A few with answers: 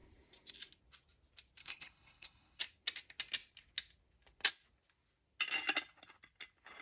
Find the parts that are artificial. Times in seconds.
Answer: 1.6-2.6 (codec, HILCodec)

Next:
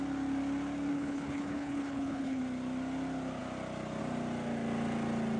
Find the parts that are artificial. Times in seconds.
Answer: 0.9-2.4 (codec, HILCodec)

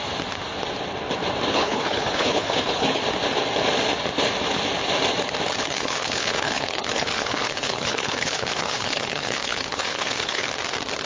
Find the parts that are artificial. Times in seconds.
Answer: 1.5-3.0 (codec, HILCodec); 5.6-10.5